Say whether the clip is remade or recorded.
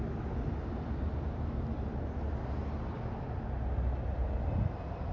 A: recorded